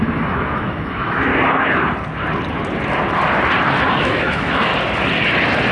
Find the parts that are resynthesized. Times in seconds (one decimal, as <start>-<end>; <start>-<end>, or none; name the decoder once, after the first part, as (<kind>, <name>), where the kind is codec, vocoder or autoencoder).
0.0-1.3 (autoencoder, DAC-VAE); 4.0-4.7